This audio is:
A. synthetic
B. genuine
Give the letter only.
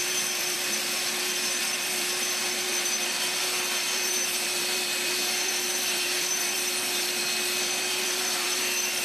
A